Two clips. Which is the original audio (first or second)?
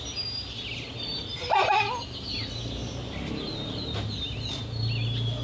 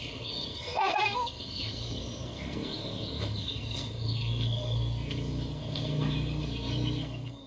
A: first